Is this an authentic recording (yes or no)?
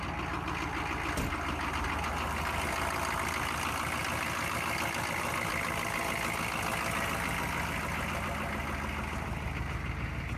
yes